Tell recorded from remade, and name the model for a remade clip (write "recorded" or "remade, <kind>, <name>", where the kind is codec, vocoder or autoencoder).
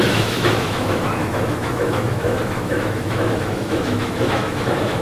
remade, autoencoder, DAC-VAE